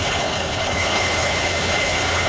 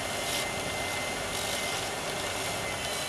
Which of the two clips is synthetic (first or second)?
first